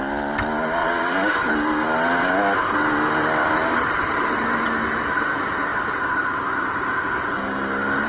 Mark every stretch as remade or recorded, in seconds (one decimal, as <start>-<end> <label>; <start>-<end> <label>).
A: 0.0-0.8 recorded; 0.8-1.5 remade; 1.5-3.4 recorded; 3.4-4.6 remade; 4.6-8.1 recorded